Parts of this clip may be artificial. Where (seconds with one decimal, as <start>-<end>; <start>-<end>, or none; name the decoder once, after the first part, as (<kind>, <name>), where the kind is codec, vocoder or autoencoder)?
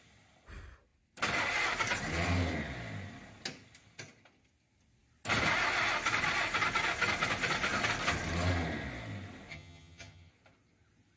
9.5-10.3 (vocoder, HiFi-GAN)